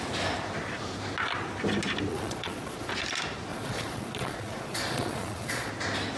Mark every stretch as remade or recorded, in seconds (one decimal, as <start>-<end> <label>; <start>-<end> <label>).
0.0-2.1 recorded; 2.1-2.9 remade; 2.9-3.5 recorded; 3.5-5.7 remade; 5.7-6.2 recorded